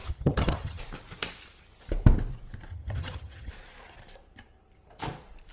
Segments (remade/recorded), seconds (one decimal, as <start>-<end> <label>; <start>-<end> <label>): 0.0-0.8 remade; 0.8-2.7 recorded; 2.7-3.5 remade; 3.5-5.5 recorded